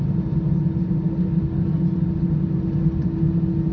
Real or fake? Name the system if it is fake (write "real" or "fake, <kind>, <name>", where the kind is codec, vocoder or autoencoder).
real